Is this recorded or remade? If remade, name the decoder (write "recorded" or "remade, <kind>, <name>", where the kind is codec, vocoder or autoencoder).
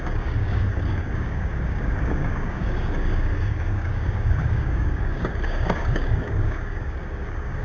remade, codec, DAC